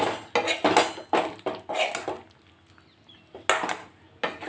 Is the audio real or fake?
real